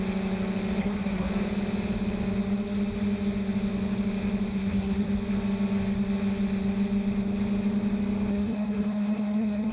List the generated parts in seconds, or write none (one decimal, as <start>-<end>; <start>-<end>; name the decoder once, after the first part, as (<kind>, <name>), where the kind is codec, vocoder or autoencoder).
0.8-1.3 (codec, SNAC); 4.5-5.1; 8.3-9.7